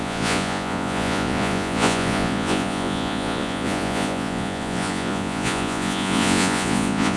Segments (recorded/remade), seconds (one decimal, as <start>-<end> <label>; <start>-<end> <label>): 0.0-7.2 remade